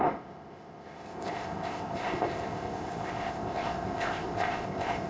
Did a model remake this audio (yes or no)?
yes